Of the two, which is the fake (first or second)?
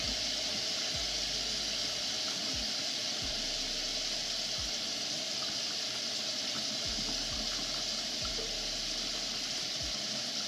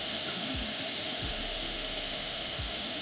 second